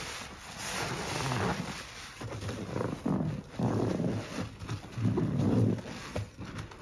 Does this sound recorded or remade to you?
recorded